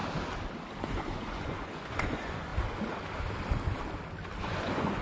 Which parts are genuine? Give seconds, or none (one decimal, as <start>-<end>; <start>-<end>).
0.0-0.8; 2.5-4.4